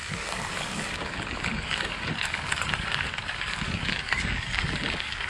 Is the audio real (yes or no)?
no